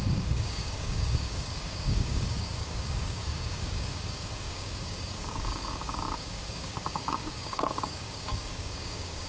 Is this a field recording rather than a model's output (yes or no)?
no